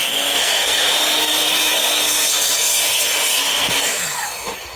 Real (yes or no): no